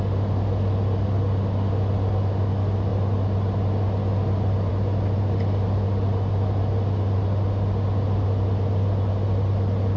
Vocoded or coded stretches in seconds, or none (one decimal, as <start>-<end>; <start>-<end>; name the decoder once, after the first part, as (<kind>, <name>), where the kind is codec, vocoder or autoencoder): none